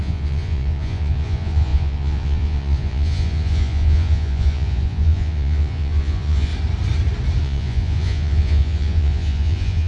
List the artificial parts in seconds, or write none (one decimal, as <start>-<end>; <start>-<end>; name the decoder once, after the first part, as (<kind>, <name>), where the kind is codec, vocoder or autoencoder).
0.0-6.5 (vocoder, Vocos); 7.4-9.9